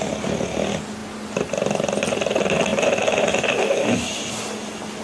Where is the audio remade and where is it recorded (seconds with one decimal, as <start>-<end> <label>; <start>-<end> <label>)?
0.0-5.0 recorded